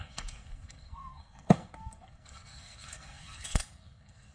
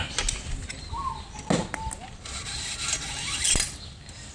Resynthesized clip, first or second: first